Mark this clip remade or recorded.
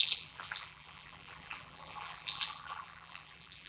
remade